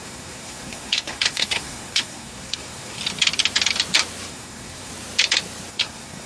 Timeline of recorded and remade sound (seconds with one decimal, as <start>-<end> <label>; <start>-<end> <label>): 0.0-3.0 remade; 3.0-4.3 recorded; 4.3-4.9 remade; 4.9-5.7 recorded; 5.7-6.3 remade